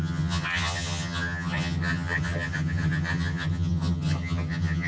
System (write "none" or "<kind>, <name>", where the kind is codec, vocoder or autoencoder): vocoder, HiFi-GAN